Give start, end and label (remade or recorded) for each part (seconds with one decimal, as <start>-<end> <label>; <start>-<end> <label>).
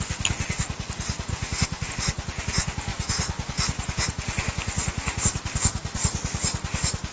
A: 0.0-1.3 recorded; 1.3-1.9 remade; 1.9-7.1 recorded